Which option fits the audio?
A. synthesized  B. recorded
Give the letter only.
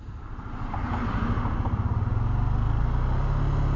B